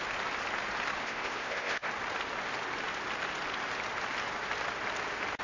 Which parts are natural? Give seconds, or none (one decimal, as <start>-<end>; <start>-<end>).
0.0-1.0; 1.9-5.4